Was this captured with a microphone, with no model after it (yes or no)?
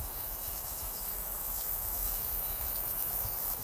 no